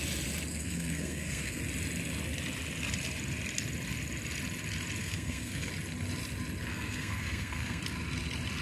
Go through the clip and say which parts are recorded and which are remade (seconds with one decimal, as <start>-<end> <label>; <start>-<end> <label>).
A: 0.0-0.5 recorded; 0.5-1.6 remade; 1.6-5.0 recorded; 5.0-5.7 remade; 5.7-6.7 recorded; 6.7-7.8 remade; 7.8-8.6 recorded